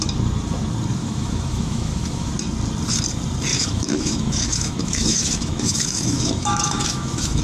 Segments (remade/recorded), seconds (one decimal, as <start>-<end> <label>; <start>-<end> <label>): 0.0-1.0 recorded; 1.0-2.3 remade; 2.3-3.5 recorded; 3.5-7.4 remade